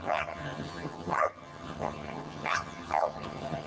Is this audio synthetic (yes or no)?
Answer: yes